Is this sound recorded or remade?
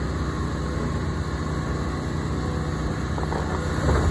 recorded